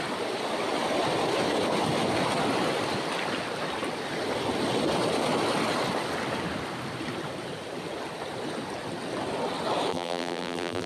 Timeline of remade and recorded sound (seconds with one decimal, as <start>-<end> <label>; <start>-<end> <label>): 0.0-9.9 recorded; 9.9-10.9 remade